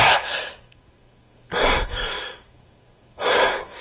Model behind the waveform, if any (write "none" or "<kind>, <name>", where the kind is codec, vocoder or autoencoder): codec, SNAC